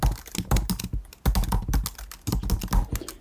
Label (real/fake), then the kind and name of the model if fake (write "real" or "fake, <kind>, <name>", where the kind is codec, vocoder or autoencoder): real